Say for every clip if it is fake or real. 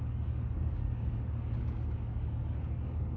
fake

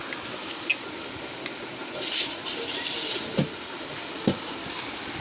real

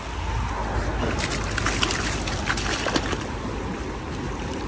real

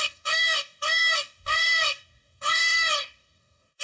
fake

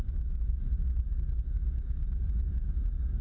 fake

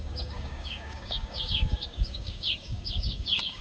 fake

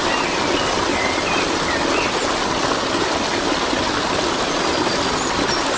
real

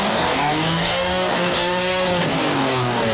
fake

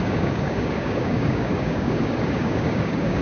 fake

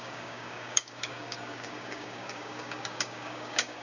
fake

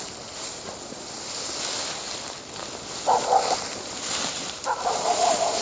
real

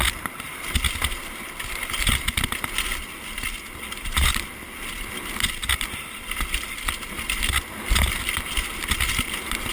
real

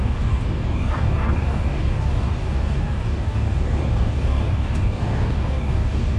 fake